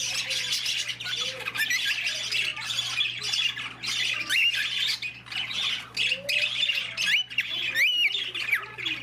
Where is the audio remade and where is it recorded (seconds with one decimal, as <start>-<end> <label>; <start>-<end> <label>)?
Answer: 0.0-2.5 recorded; 2.5-3.2 remade; 3.2-9.0 recorded